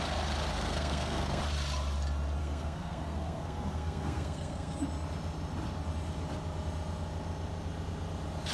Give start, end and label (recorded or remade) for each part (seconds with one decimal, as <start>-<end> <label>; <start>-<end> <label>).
0.0-0.5 recorded; 0.5-1.4 remade; 1.4-2.4 recorded; 2.4-4.8 remade; 4.8-8.5 recorded

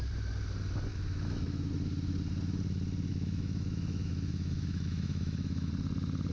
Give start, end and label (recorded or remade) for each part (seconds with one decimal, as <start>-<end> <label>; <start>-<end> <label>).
0.0-0.9 recorded; 0.9-1.7 remade; 1.7-3.1 recorded; 3.1-5.7 remade; 5.7-6.3 recorded

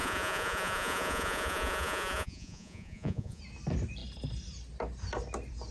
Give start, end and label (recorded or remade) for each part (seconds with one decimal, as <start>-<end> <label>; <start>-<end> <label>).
0.0-3.4 remade; 3.4-5.7 recorded

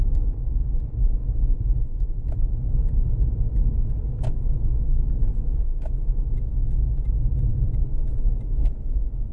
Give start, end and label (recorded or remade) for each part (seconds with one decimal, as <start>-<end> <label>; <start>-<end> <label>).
0.0-7.5 recorded; 7.5-8.3 remade; 8.3-9.3 recorded

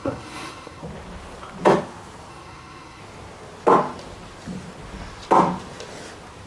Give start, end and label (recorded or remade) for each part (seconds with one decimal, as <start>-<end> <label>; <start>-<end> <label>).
0.0-0.8 remade; 0.8-2.3 recorded; 2.3-3.0 remade; 3.0-6.5 recorded

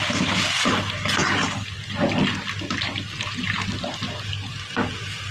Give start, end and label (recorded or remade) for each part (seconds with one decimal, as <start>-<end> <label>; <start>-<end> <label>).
0.0-5.3 recorded